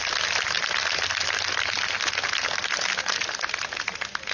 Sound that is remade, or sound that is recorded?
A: recorded